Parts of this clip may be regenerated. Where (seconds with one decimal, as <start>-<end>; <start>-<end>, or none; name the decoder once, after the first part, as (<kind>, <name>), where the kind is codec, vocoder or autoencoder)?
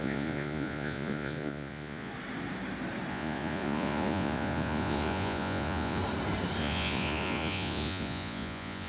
0.0-2.1 (vocoder, Vocos); 3.1-6.0; 6.6-8.9